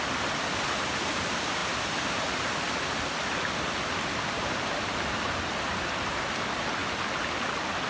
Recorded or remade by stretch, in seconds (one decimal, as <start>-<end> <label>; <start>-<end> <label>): 0.0-7.9 recorded